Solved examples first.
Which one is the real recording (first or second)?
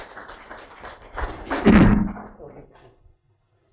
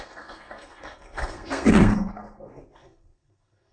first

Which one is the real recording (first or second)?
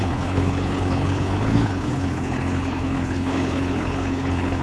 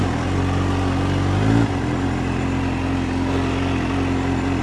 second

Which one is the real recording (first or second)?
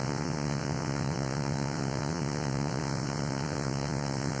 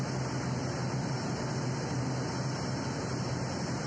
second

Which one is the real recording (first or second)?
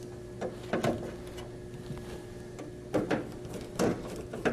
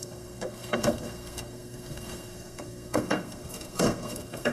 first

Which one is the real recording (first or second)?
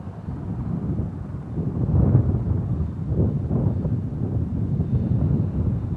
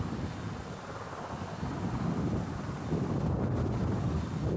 first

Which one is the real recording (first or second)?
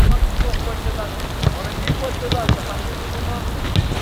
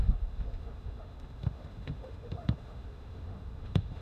first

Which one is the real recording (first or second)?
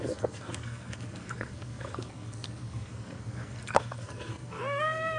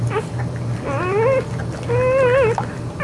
second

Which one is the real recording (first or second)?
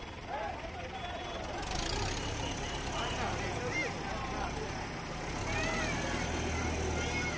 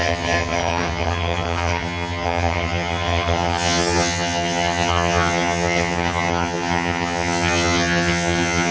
first